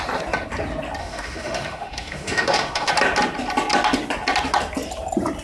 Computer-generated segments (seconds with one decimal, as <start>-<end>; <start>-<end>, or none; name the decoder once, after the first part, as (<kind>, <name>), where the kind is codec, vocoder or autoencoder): 1.0-2.9 (autoencoder, DAC-VAE)